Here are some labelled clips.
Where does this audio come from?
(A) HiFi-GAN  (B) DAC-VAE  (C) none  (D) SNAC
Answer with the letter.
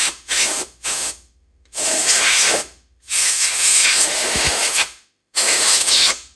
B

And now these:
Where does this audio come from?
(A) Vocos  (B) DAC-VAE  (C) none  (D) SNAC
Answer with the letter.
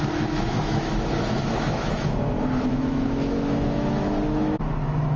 B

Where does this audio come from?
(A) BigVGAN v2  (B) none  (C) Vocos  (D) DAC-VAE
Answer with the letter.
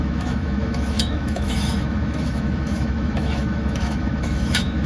D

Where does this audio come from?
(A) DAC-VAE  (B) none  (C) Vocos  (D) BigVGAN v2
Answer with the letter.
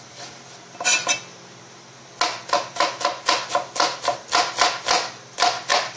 B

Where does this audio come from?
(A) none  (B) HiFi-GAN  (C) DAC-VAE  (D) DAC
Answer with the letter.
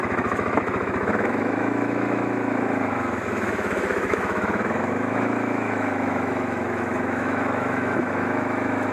C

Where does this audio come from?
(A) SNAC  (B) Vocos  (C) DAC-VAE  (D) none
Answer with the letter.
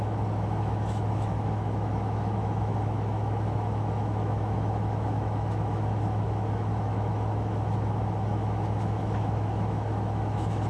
C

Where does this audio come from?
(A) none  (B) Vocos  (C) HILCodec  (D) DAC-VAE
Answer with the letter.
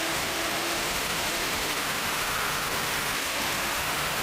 D